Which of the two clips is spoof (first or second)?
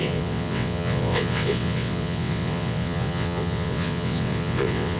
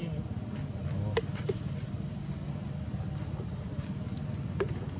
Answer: first